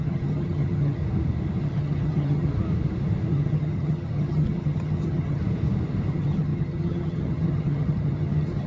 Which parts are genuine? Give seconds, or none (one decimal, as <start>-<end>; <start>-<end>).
1.0-1.6; 2.5-3.3; 5.4-6.1